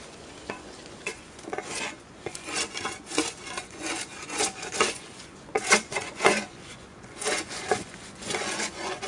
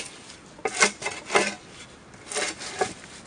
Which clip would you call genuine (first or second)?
second